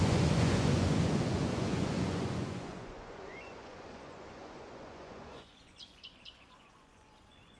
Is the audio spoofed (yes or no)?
yes